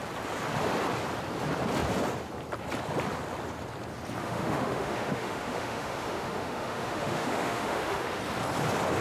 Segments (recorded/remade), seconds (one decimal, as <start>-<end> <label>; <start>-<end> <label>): 0.0-4.2 recorded; 4.2-8.2 remade; 8.2-9.0 recorded